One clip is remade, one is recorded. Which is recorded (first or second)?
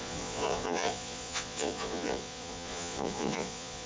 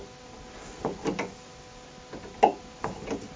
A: second